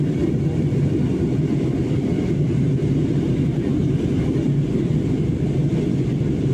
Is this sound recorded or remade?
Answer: recorded